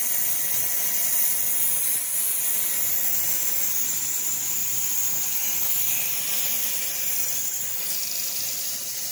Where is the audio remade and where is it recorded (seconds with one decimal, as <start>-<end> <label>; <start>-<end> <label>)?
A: 0.0-4.6 recorded; 4.6-5.8 remade; 5.8-6.6 recorded; 6.6-9.1 remade